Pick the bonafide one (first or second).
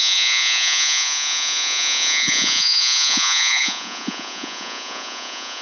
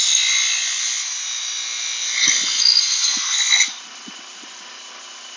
second